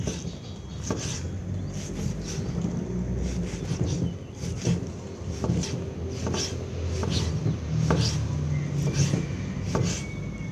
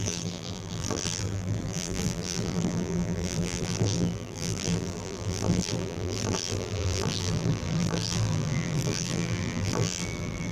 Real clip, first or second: first